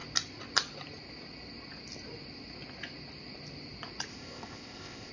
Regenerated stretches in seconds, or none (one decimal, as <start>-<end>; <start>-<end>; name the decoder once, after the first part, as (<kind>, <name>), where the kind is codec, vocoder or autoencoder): 4.1-5.1 (codec, ZipCodec)